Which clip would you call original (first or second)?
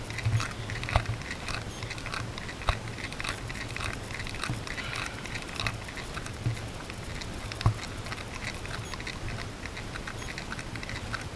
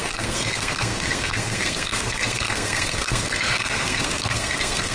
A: first